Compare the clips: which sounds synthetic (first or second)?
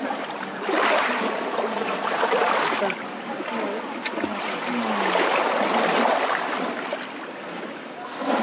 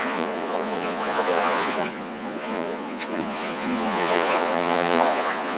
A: second